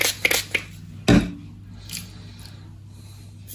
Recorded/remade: recorded